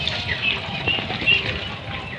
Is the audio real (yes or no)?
yes